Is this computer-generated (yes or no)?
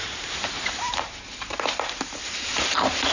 yes